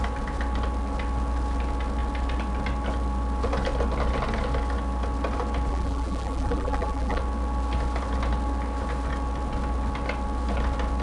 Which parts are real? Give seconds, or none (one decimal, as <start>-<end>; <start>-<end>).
0.0-5.7; 7.2-11.0